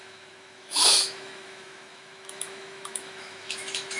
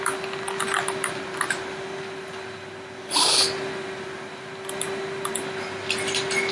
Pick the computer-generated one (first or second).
first